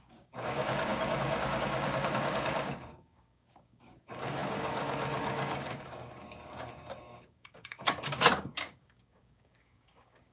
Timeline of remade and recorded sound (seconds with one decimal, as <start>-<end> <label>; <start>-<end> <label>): 0.0-10.3 remade